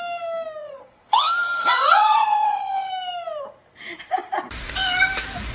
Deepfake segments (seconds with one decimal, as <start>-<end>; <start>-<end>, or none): 0.6-1.2; 1.6-2.9